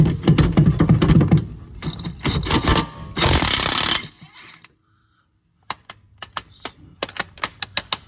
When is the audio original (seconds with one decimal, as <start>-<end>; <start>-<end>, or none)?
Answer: 0.0-8.1